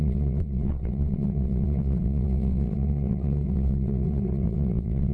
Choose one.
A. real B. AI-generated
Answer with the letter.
B